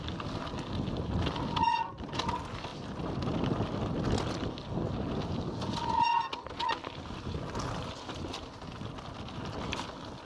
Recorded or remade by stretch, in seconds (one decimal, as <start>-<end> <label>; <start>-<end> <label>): 0.0-10.3 recorded